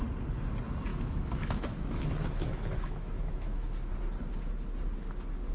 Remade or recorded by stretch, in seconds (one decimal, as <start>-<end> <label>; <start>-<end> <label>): 0.0-0.9 recorded; 0.9-3.9 remade; 3.9-5.5 recorded

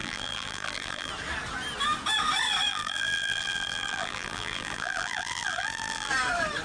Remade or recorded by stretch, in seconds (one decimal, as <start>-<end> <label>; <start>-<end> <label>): 0.0-1.1 remade; 1.1-2.7 recorded; 2.7-6.1 remade; 6.1-6.6 recorded